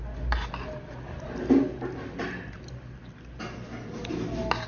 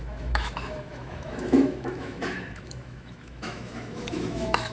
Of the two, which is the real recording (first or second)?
first